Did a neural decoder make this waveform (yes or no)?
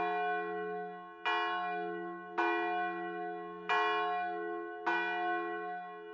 no